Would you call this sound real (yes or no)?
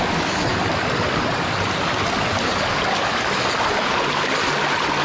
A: yes